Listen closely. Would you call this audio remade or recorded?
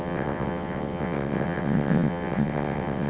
remade